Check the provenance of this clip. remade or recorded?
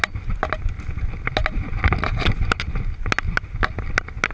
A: recorded